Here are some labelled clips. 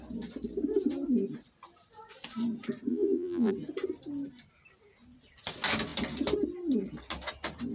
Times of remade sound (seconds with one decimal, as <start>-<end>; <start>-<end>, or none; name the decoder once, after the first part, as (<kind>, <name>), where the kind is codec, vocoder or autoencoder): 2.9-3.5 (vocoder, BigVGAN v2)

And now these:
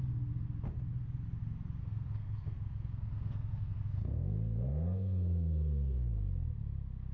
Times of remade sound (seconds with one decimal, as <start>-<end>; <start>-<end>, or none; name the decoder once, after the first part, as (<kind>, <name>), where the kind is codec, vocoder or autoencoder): 1.8-6.1 (codec, SNAC)

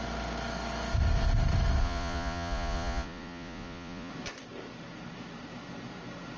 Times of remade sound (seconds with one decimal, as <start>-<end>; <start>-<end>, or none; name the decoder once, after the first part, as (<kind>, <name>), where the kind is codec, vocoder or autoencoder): 1.8-4.1 (vocoder, Vocos)